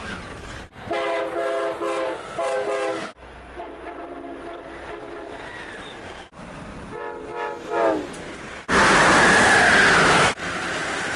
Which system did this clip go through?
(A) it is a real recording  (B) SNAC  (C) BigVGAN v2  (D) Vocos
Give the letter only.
A